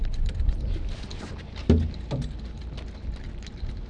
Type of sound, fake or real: real